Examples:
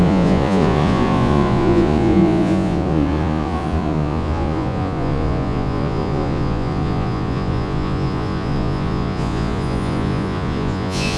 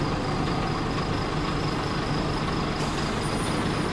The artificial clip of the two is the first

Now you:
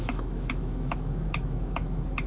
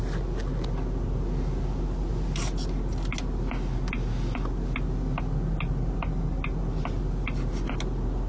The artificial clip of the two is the first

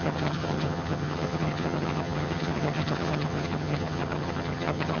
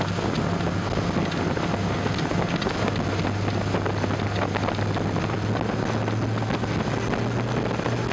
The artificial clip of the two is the first